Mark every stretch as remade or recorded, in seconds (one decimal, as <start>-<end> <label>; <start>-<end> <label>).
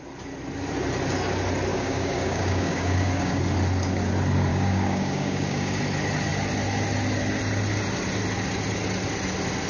0.0-1.7 recorded; 1.7-3.4 remade; 3.4-4.5 recorded; 4.5-5.8 remade; 5.8-9.7 recorded